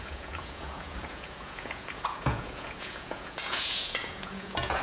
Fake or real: fake